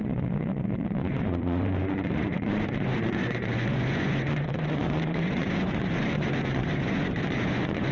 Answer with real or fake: fake